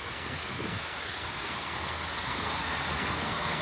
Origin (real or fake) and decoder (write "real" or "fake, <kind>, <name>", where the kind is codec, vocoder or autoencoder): fake, codec, SNAC